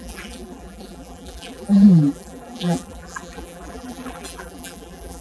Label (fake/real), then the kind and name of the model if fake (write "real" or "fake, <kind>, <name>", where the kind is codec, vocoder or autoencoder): fake, vocoder, BigVGAN v2